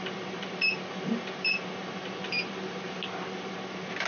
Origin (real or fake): fake